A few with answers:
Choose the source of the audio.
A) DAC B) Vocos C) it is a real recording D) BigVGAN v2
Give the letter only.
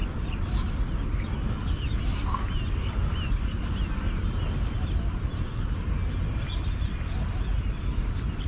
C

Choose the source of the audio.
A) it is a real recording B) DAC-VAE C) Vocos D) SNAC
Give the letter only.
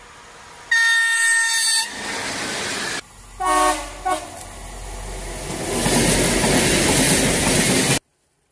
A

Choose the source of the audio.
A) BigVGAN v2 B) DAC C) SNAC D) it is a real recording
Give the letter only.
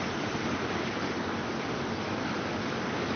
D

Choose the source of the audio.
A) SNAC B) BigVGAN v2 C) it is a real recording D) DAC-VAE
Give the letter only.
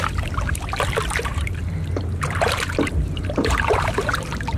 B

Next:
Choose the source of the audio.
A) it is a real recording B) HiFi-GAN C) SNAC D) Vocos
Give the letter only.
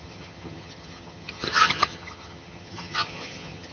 B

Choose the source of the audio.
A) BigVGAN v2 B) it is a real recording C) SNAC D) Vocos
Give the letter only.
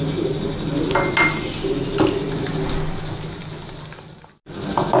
B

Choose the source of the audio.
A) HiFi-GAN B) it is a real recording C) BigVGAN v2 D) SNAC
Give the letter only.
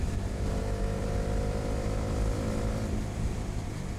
C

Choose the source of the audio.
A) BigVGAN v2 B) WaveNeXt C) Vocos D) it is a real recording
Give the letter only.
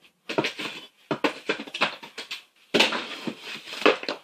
D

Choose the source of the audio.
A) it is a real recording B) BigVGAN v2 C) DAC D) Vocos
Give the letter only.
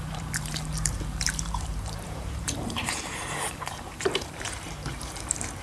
B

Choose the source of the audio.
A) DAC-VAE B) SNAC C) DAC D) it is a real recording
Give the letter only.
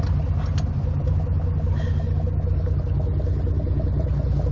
D